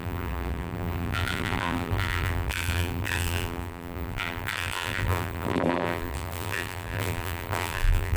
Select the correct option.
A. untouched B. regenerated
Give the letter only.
B